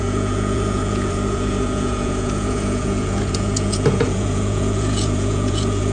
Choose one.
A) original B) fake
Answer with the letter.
B